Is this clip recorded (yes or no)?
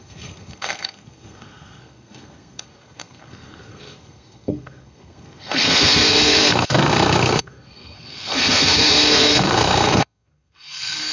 no